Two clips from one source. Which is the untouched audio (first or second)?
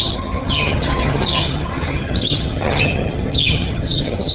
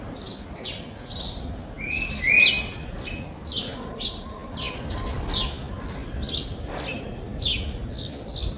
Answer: second